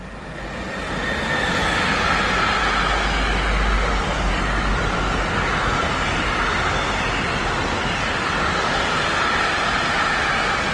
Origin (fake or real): real